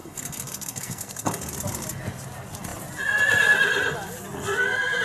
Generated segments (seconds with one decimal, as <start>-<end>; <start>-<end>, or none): 0.0-1.5